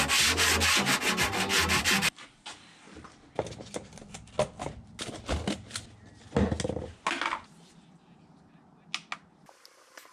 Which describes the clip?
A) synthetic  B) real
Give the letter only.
B